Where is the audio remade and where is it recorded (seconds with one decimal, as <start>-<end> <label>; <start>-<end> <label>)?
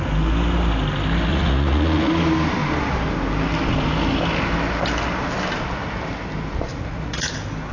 0.0-1.3 recorded; 1.3-2.1 remade; 2.1-6.7 recorded; 6.7-7.3 remade; 7.3-7.7 recorded